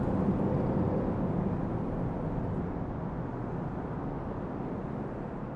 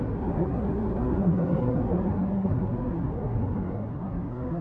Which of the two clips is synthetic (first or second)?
second